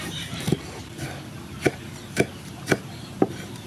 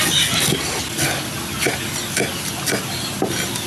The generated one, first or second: first